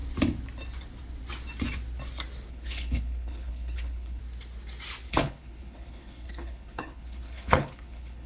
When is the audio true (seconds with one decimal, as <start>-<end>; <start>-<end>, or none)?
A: 0.0-2.5; 4.2-5.1